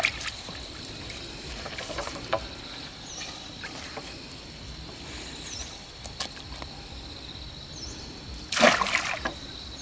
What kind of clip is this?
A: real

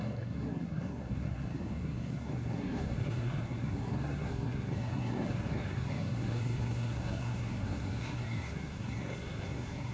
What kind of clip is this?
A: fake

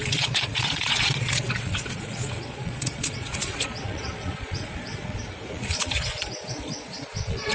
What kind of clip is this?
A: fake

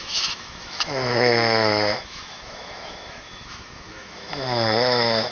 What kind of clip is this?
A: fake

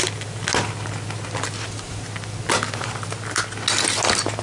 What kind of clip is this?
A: real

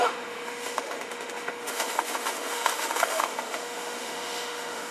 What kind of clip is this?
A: fake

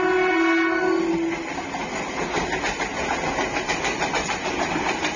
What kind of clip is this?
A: real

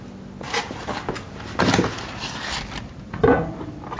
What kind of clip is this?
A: real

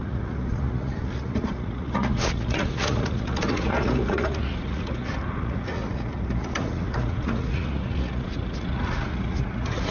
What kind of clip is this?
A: fake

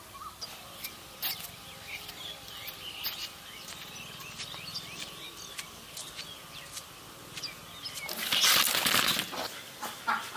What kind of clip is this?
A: real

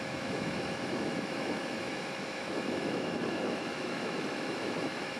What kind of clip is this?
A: fake